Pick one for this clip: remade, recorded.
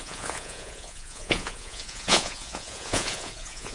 remade